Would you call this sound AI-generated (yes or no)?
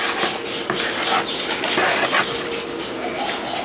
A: no